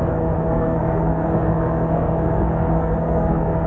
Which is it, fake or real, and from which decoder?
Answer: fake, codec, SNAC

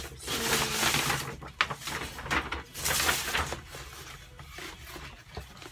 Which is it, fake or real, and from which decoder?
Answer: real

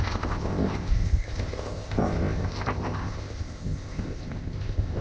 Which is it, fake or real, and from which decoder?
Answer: fake, codec, ZipCodec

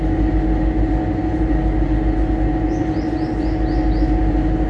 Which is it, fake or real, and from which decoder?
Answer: real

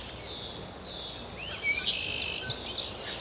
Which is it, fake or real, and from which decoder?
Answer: real